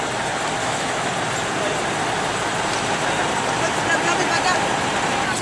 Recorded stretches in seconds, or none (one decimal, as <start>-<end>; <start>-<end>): 0.0-0.6; 1.1-5.4